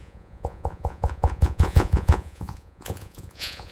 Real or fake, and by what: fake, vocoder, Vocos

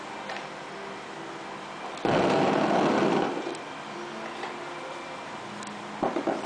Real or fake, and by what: real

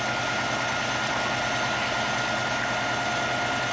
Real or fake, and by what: real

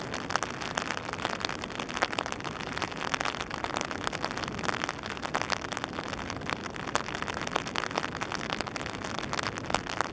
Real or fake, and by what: real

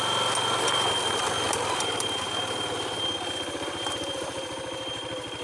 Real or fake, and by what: real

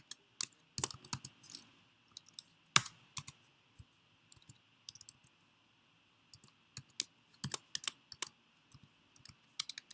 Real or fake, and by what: real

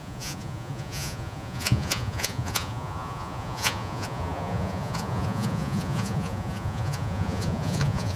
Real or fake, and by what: fake, vocoder, Vocos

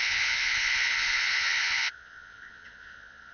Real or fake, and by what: fake, vocoder, Vocos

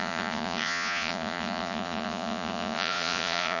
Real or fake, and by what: fake, vocoder, Vocos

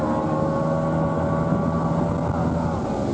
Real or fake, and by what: real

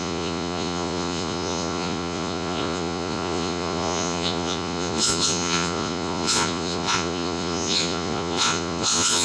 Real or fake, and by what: fake, vocoder, Vocos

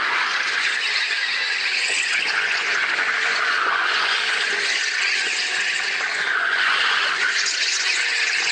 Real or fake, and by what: fake, vocoder, Vocos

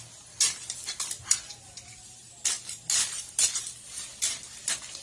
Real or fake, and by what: real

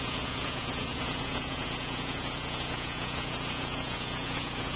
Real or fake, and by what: fake, vocoder, Vocos